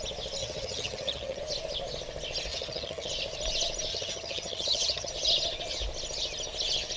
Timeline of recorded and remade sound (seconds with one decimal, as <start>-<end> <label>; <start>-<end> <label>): 0.0-0.4 recorded; 0.4-1.4 remade; 1.4-2.5 recorded; 2.5-3.1 remade; 3.1-3.9 recorded; 3.9-5.1 remade; 5.1-7.0 recorded